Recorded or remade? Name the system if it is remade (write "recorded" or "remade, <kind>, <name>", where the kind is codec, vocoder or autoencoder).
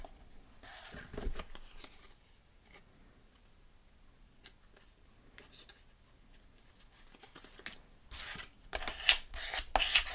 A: recorded